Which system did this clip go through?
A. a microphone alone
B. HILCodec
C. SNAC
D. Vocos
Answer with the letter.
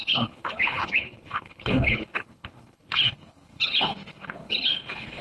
B